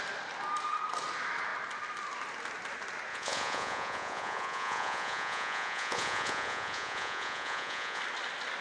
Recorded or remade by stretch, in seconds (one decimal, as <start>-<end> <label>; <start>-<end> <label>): 0.0-3.1 recorded; 3.1-8.0 remade; 8.0-8.6 recorded